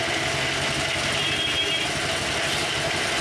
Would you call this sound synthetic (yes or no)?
no